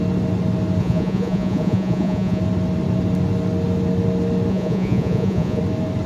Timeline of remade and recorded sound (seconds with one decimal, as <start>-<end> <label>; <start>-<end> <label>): 0.0-0.8 recorded; 0.8-2.4 remade; 2.4-4.5 recorded; 4.5-5.6 remade; 5.6-6.1 recorded